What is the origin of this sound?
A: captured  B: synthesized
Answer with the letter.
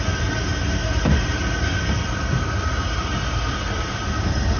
A